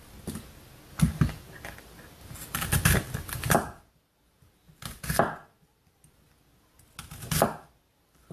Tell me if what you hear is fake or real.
real